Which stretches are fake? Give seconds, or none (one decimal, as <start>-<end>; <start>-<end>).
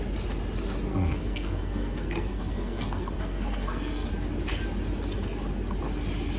0.9-4.1